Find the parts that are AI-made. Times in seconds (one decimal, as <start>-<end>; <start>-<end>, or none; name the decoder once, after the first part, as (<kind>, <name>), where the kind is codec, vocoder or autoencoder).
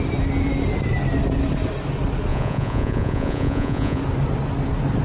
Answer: 2.3-4.0 (vocoder, Vocos)